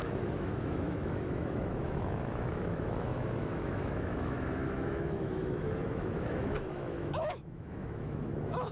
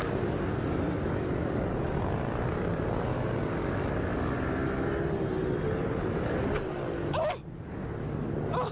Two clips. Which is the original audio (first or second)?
second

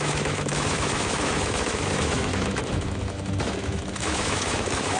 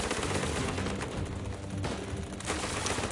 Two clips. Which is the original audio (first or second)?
second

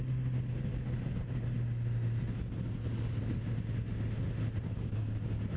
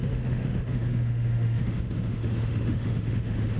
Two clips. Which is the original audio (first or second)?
first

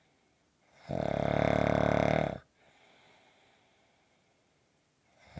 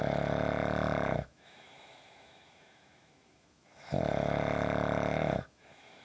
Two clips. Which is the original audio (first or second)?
first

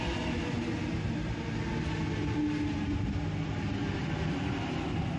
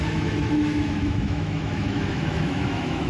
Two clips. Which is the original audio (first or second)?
first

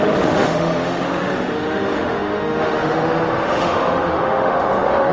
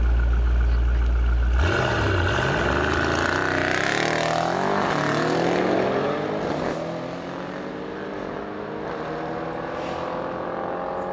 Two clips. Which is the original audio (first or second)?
second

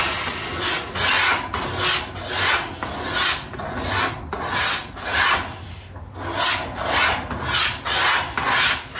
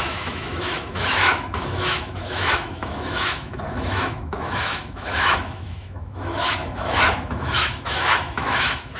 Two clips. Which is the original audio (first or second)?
first